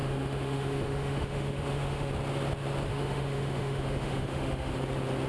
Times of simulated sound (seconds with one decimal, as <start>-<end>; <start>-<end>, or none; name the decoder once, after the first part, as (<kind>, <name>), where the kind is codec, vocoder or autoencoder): 0.0-2.1 (autoencoder, DAC-VAE); 2.9-4.7